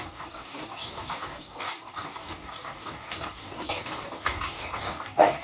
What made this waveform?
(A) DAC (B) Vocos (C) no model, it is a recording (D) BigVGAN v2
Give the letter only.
A